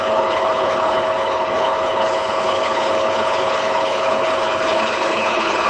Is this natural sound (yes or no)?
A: no